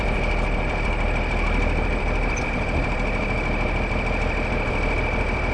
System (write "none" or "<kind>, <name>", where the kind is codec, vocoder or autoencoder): vocoder, BigVGAN v2